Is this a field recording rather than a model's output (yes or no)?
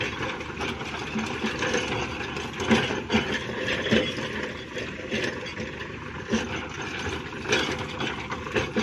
yes